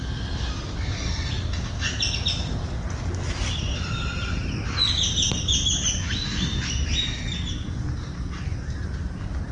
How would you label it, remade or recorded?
recorded